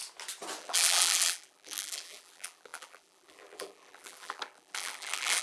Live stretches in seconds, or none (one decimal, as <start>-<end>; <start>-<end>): 0.0-0.6